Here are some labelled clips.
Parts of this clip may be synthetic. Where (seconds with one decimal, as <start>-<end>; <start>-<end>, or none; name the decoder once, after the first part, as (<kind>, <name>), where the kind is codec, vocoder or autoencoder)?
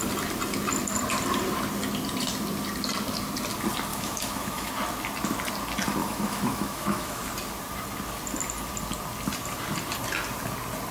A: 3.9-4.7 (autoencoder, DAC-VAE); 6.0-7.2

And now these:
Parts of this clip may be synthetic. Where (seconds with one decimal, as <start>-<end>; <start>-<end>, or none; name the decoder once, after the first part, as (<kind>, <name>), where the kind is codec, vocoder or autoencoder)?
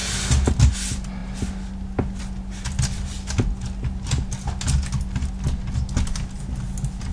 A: none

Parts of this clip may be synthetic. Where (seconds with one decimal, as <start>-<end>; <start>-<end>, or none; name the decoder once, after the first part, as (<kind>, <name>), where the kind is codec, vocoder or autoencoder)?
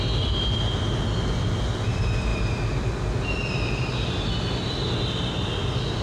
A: none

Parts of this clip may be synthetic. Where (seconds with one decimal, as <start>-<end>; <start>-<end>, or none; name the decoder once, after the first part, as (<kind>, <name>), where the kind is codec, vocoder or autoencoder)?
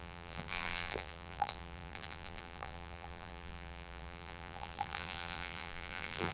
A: 0.0-6.3 (vocoder, BigVGAN v2)